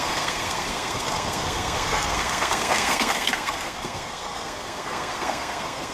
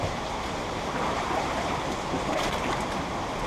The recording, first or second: second